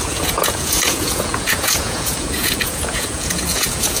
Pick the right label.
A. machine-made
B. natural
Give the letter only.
A